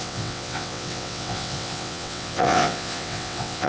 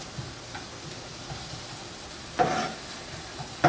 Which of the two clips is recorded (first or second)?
second